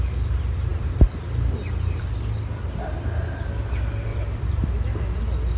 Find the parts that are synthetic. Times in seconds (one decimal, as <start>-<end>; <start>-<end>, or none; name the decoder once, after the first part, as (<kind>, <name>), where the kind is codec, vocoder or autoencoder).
4.1-4.7 (vocoder, BigVGAN v2)